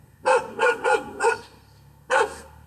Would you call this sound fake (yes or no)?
yes